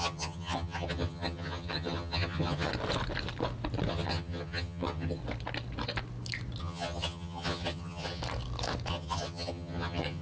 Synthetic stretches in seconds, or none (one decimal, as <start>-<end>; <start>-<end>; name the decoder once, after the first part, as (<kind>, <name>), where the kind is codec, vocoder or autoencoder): 0.0-2.7 (vocoder, HiFi-GAN); 3.9-5.2; 6.6-8.2; 8.9-10.2